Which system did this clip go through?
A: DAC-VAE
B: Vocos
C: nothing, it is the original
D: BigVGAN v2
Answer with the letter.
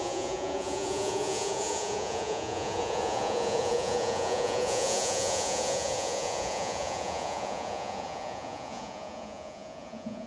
B